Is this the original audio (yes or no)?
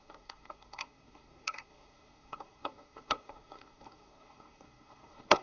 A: no